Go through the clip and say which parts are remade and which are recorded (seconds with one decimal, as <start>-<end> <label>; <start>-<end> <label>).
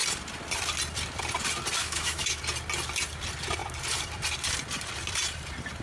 0.0-1.8 recorded; 1.8-2.4 remade; 2.4-5.8 recorded